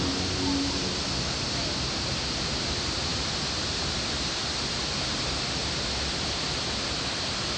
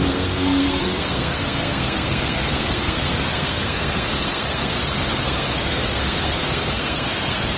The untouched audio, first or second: first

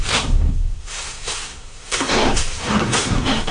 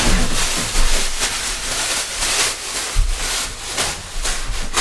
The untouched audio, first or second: second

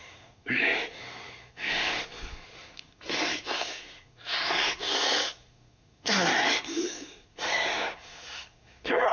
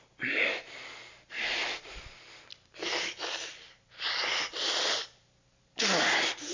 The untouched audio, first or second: second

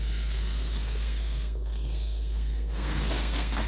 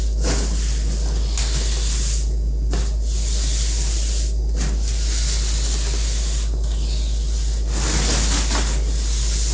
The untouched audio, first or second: second